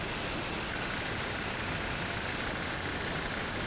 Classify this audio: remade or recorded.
recorded